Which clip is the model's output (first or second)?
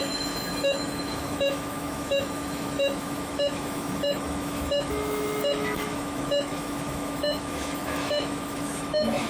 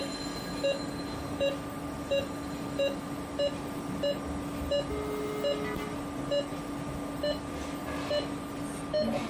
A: first